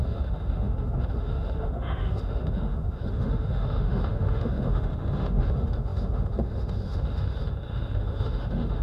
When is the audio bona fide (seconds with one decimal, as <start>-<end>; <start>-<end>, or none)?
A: none